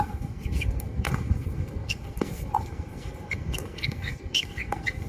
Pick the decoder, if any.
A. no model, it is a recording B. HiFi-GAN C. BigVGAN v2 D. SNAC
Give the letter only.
D